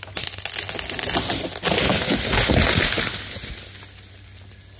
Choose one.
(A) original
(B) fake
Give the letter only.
A